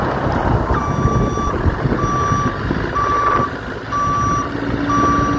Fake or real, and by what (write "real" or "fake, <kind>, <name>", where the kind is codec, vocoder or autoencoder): real